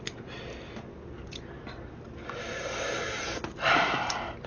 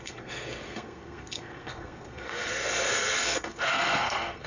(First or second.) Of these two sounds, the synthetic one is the second